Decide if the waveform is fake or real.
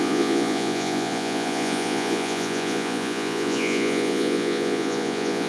fake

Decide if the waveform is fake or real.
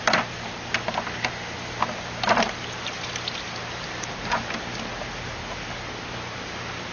real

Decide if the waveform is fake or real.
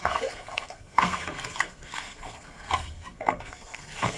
fake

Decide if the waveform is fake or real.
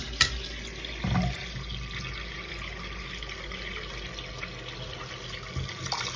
real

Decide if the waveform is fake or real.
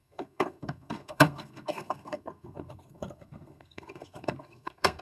fake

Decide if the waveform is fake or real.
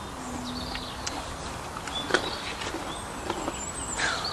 real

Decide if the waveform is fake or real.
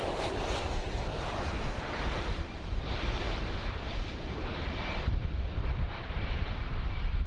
fake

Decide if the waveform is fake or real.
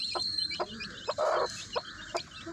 fake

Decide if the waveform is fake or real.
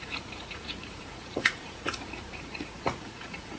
fake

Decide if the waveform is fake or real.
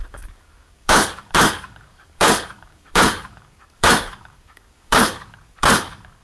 fake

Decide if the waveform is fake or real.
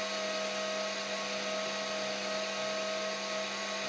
real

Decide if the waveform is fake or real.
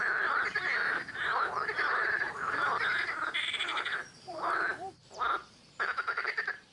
fake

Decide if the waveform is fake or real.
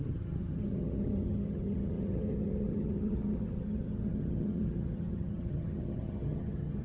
fake